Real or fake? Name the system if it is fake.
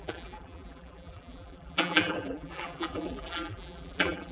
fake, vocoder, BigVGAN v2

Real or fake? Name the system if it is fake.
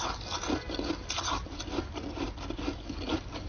real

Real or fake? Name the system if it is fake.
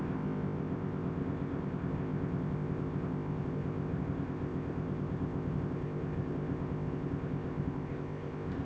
fake, codec, ZipCodec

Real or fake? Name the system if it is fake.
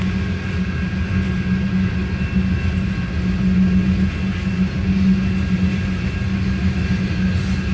real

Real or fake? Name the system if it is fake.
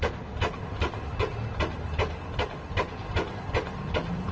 real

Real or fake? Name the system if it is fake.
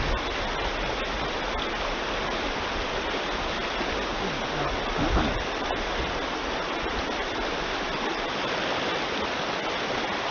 real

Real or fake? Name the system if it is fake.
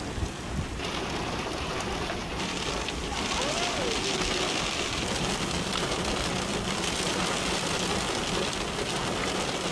real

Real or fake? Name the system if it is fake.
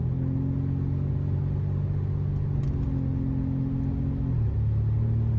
real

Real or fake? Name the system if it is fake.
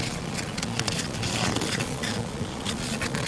fake, vocoder, Vocos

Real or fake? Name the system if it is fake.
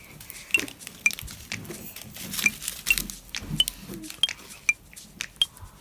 real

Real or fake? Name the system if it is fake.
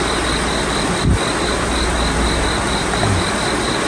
real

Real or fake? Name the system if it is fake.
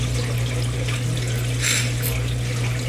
real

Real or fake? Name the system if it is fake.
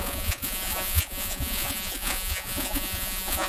fake, vocoder, Vocos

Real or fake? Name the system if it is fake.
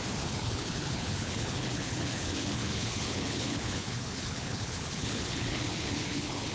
fake, codec, HILCodec